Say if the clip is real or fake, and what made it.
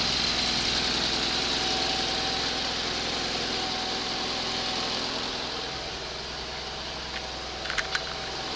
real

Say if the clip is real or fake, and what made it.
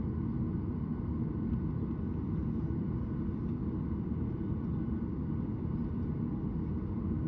real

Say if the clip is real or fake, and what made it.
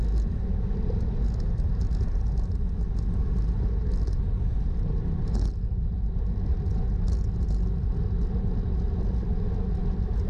real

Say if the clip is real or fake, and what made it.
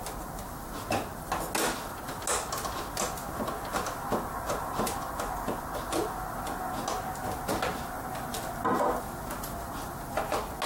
real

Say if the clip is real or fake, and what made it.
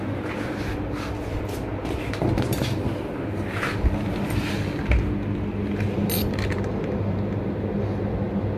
real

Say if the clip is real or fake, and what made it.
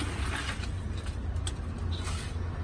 real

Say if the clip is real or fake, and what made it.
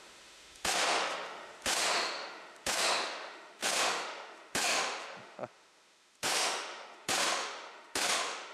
fake, autoencoder, DAC-VAE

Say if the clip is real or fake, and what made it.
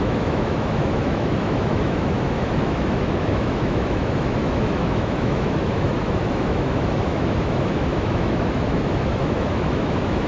fake, autoencoder, DAC-VAE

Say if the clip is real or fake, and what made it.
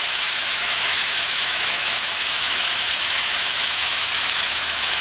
fake, autoencoder, DAC-VAE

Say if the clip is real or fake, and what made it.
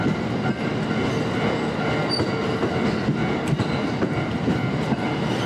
real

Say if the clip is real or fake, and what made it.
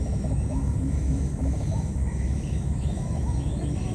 fake, autoencoder, DAC-VAE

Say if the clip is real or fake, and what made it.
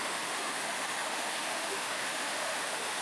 fake, autoencoder, DAC-VAE